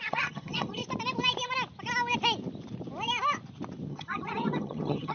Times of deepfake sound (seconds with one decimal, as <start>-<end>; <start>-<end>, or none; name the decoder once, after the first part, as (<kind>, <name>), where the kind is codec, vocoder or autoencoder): 0.0-0.8 (vocoder, HiFi-GAN); 3.9-5.1